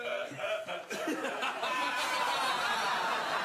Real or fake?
fake